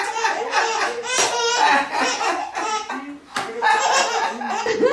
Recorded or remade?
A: recorded